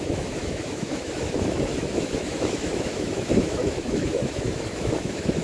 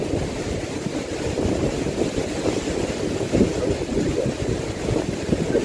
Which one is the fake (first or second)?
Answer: first